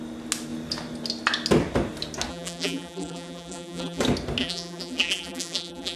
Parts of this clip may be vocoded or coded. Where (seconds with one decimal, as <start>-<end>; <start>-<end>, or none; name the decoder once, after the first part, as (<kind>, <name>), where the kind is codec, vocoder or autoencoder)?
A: 2.3-4.0 (vocoder, BigVGAN v2); 4.4-6.0